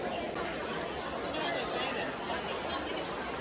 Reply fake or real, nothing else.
real